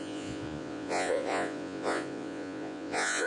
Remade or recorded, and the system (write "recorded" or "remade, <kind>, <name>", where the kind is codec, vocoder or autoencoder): remade, vocoder, Vocos